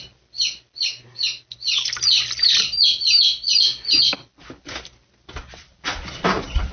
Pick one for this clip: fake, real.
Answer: real